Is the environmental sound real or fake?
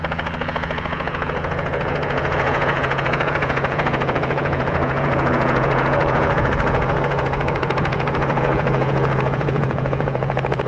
fake